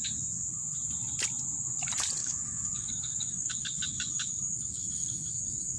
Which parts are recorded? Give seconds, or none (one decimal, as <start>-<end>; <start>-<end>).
0.0-2.2